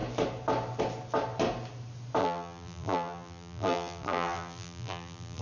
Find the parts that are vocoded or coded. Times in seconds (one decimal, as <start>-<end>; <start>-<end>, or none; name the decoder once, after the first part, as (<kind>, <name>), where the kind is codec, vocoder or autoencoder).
2.2-5.4 (vocoder, BigVGAN v2)